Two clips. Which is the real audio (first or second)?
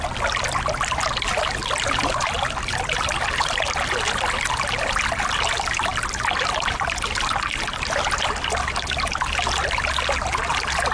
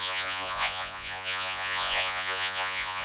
first